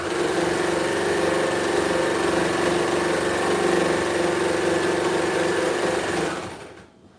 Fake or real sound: real